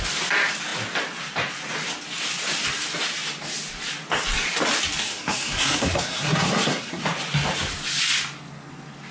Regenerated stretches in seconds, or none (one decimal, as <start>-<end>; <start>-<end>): 5.0-7.0